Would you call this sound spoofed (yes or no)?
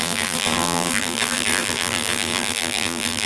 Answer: yes